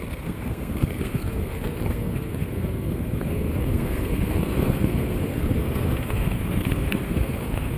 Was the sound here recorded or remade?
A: remade